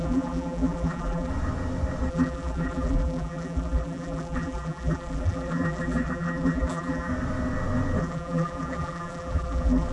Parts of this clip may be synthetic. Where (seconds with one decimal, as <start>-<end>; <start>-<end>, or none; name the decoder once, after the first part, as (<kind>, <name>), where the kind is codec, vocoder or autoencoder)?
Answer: 0.0-1.3 (vocoder, BigVGAN v2); 2.1-7.1; 8.0-9.9